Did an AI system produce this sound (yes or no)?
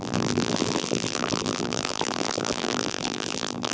yes